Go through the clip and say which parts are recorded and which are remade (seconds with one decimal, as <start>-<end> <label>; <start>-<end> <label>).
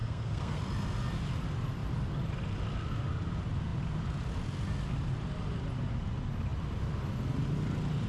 0.0-0.6 remade; 0.6-8.1 recorded